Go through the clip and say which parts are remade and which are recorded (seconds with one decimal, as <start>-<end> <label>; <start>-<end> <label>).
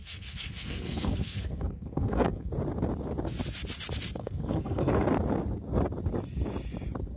0.0-2.5 remade; 2.5-4.2 recorded; 4.2-4.9 remade; 4.9-7.2 recorded